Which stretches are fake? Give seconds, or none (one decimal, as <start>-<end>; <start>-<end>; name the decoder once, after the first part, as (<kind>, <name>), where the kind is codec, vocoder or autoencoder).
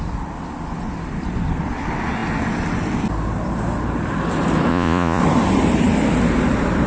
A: 4.7-5.2 (vocoder, Vocos)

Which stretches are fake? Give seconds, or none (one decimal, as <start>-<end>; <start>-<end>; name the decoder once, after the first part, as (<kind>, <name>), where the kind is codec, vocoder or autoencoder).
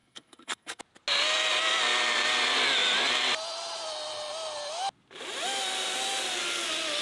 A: 0.0-0.8 (codec, SNAC)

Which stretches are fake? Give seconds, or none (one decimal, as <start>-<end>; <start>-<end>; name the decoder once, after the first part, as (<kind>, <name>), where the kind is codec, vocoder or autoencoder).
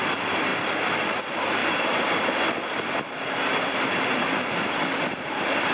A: none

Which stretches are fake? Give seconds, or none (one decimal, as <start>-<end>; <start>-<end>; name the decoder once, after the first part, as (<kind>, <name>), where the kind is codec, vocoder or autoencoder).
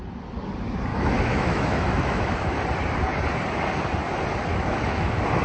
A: 0.9-2.6 (autoencoder, DAC-VAE); 4.5-5.4